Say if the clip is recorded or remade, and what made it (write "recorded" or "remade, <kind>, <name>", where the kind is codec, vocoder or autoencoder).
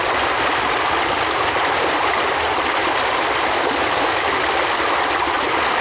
recorded